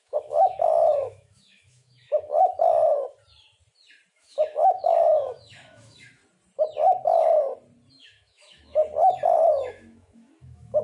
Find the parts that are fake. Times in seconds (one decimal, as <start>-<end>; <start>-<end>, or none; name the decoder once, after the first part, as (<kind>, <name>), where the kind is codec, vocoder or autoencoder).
0.0-2.4 (autoencoder, DAC-VAE); 4.1-6.2; 7.9-8.8; 9.5-10.8